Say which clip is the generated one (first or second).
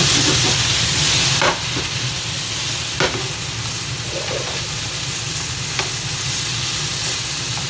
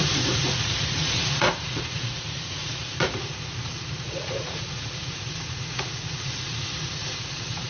second